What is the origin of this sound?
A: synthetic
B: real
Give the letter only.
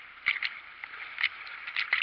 B